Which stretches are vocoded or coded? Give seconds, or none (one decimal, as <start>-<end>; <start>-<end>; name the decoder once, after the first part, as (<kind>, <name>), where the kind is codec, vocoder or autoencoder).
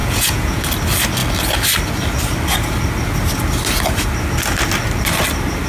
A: 0.0-0.6 (vocoder, Vocos)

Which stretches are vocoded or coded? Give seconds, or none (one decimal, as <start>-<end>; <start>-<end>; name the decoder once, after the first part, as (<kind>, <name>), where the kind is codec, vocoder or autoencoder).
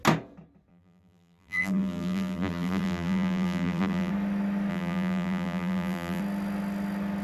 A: 0.7-4.1 (vocoder, BigVGAN v2); 4.7-6.2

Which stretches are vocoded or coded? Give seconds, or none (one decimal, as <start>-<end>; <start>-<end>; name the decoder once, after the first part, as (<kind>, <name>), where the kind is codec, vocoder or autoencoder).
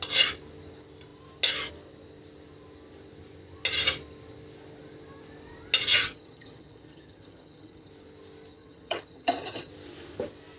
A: 5.9-7.9 (vocoder, HiFi-GAN); 8.5-9.7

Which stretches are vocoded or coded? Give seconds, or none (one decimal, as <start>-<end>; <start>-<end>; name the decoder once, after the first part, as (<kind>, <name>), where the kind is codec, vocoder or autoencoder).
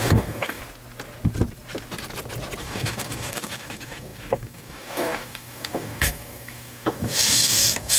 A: 0.0-0.6 (codec, DAC); 2.6-8.0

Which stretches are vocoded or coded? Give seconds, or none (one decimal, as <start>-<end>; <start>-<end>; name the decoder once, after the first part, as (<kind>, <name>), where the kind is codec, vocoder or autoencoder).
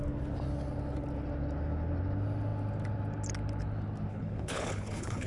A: 4.1-5.3 (codec, HILCodec)